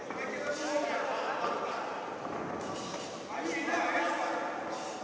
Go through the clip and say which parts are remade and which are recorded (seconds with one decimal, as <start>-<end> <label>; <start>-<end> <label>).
0.0-5.0 recorded